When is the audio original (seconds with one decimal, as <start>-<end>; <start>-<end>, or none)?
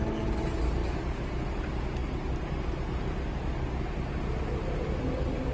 0.0-5.5